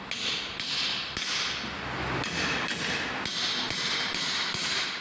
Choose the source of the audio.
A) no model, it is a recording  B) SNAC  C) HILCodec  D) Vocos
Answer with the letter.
A